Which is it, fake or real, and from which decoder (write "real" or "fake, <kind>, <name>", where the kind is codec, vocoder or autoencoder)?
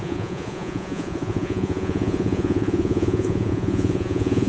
fake, vocoder, Vocos